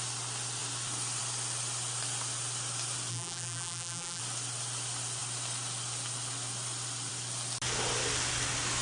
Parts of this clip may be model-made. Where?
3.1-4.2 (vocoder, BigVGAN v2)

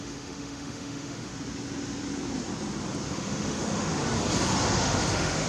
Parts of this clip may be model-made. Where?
0.0-1.3 (autoencoder, DAC-VAE); 3.1-4.0; 4.7-5.5

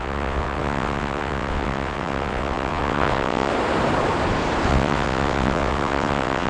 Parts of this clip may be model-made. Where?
0.0-3.5 (vocoder, WaveNeXt); 4.7-6.5

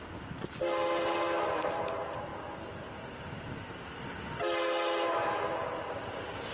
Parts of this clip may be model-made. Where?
none

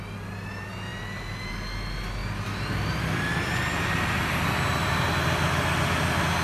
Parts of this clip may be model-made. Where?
none

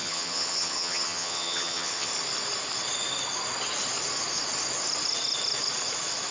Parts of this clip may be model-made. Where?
0.0-2.1 (vocoder, HiFi-GAN)

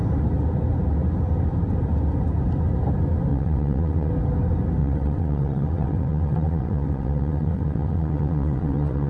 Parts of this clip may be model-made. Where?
3.3-4.1 (vocoder, WaveNeXt); 4.8-9.1